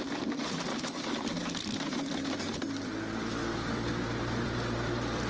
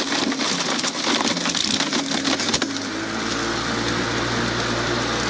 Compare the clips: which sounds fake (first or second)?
first